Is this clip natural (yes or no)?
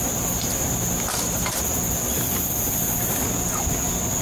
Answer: yes